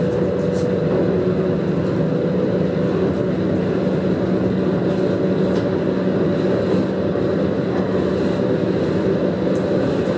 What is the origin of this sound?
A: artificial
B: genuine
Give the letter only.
B